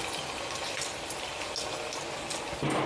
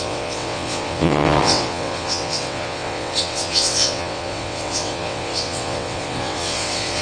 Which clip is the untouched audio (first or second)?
first